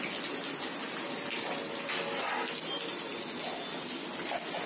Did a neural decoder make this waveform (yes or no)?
no